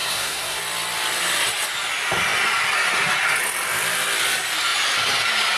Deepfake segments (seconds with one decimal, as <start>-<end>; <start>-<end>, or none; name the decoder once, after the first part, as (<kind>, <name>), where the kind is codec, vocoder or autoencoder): 0.0-0.6 (codec, SNAC)